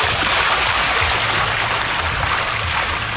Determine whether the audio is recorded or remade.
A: recorded